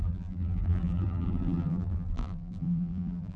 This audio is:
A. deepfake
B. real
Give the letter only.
A